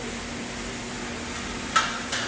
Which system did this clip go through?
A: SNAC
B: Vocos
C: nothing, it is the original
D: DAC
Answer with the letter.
C